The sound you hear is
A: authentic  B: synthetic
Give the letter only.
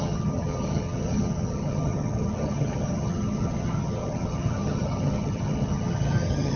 B